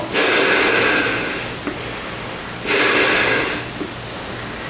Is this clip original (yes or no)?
yes